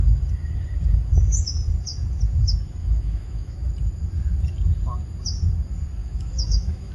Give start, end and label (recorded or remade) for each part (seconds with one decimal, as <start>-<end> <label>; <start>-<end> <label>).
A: 0.0-2.8 recorded; 2.8-3.7 remade; 3.7-6.0 recorded; 6.0-6.9 remade